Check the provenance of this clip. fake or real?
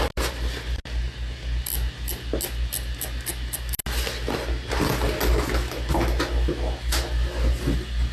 real